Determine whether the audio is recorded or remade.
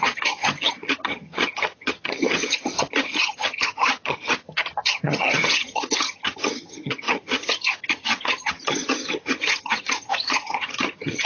remade